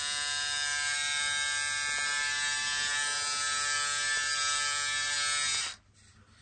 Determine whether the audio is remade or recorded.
recorded